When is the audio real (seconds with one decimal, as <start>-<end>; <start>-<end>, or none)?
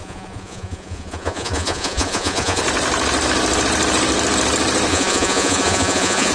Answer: 2.6-4.9